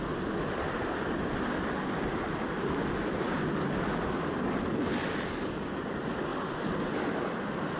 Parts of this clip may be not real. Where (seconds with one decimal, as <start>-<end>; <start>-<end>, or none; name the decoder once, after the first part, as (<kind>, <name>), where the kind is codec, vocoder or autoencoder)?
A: none